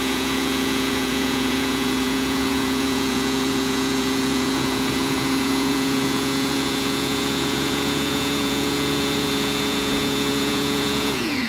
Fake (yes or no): yes